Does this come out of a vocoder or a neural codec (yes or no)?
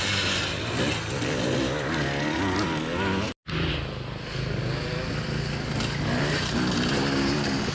no